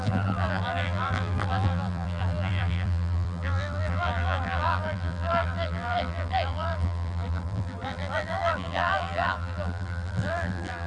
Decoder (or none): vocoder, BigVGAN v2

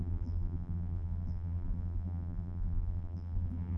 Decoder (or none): vocoder, BigVGAN v2